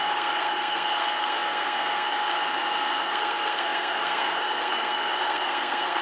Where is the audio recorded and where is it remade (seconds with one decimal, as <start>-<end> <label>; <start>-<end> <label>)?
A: 0.0-6.0 remade